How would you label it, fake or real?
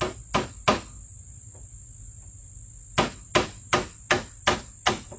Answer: real